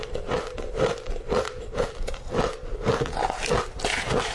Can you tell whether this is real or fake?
real